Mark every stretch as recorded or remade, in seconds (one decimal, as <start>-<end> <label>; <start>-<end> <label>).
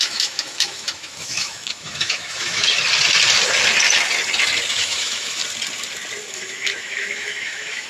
0.0-2.7 remade; 2.7-4.7 recorded; 4.7-5.4 remade; 5.4-6.3 recorded; 6.3-7.9 remade